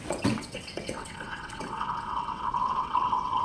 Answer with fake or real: fake